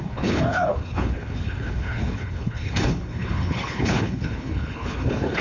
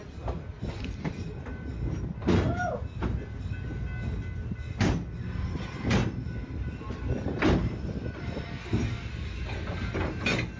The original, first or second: second